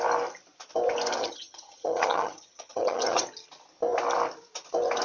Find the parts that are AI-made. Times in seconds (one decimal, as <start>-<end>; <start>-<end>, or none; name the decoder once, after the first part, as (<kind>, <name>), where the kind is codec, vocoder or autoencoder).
1.2-3.2 (vocoder, HiFi-GAN)